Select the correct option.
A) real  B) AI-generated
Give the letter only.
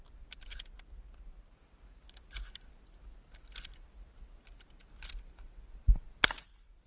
A